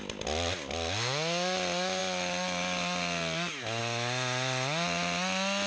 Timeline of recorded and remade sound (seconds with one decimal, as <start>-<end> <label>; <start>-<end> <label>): 0.0-5.7 recorded